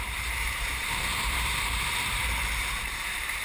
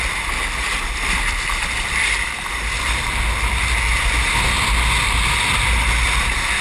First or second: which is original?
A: second